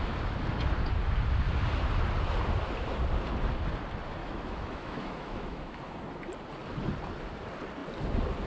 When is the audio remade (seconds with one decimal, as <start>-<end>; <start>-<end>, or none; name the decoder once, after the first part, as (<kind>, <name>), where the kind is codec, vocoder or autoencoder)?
4.2-5.8 (autoencoder, DAC-VAE)